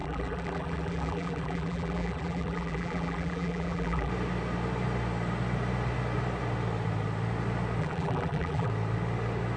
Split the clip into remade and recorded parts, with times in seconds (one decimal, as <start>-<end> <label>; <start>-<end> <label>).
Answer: 0.0-4.1 remade; 4.1-7.8 recorded; 7.8-8.7 remade; 8.7-9.6 recorded